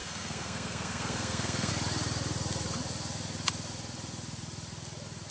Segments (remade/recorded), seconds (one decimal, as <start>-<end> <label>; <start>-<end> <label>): 0.0-1.7 remade; 1.7-5.3 recorded